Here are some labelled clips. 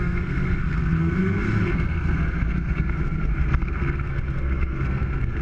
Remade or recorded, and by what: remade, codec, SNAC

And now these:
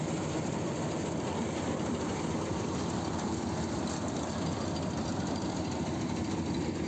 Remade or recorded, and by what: remade, vocoder, BigVGAN v2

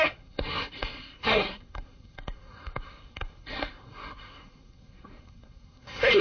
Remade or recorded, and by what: remade, codec, SNAC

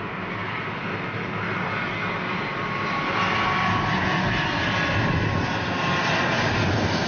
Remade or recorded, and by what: recorded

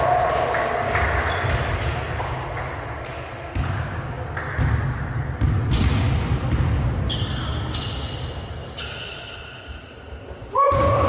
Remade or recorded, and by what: recorded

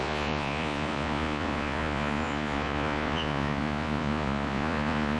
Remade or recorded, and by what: remade, vocoder, Vocos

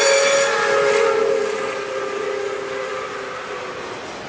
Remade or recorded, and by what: recorded